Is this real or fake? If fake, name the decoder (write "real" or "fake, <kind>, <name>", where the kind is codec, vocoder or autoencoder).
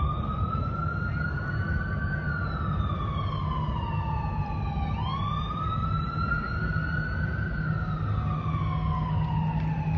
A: real